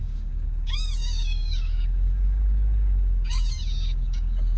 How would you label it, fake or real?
fake